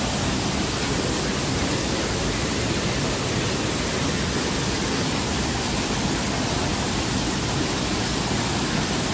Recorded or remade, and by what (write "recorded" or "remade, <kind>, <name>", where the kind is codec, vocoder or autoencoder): recorded